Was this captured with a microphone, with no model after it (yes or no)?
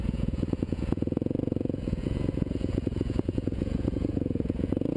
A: no